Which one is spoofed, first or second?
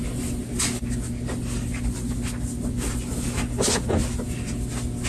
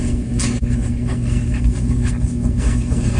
second